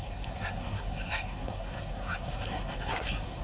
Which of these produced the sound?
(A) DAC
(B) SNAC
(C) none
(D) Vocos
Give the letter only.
B